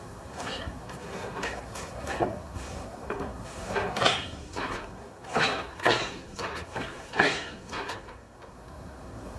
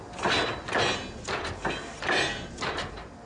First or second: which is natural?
second